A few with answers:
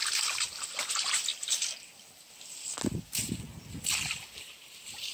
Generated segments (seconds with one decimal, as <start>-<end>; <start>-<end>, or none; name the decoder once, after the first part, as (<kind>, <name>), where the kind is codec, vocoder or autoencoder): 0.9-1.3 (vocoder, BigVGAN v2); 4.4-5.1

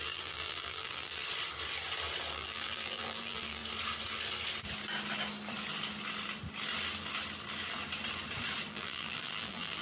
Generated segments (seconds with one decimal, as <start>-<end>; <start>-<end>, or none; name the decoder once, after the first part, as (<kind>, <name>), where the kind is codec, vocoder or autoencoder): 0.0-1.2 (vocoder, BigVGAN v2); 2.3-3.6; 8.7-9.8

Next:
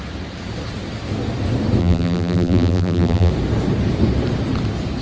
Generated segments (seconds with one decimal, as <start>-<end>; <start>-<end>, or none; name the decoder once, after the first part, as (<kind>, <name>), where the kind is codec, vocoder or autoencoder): 1.8-3.3 (vocoder, BigVGAN v2)

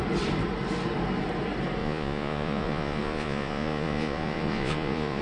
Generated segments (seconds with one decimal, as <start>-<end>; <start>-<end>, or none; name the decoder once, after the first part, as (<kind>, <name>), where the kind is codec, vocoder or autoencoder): 1.8-5.2 (vocoder, Vocos)

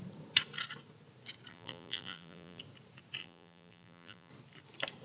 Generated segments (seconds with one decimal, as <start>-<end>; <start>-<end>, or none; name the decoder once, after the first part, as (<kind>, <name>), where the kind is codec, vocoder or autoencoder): 1.5-2.6 (vocoder, BigVGAN v2); 3.2-4.3

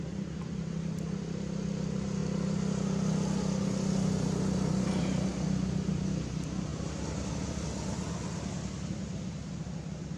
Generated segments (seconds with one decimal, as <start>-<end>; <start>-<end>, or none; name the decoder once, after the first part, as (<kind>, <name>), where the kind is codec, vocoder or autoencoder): 6.7-7.3 (vocoder, BigVGAN v2)

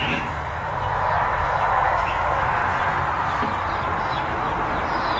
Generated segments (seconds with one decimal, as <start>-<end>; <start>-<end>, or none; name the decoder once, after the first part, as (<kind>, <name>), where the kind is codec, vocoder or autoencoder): 0.0-2.6 (autoencoder, DAC-VAE); 4.0-4.5